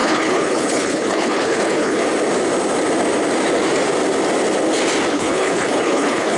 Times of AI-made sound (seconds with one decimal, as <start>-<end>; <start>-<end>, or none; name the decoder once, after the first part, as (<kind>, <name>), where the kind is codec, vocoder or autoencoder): 0.0-2.0 (codec, HILCodec); 5.1-6.4